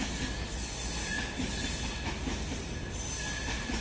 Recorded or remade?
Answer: recorded